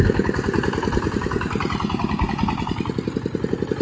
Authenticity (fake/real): real